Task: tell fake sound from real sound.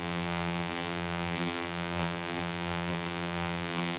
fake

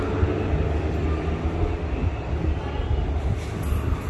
real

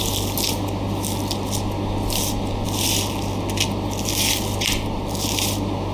real